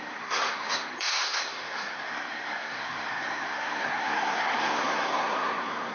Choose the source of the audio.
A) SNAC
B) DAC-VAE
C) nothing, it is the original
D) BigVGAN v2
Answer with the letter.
A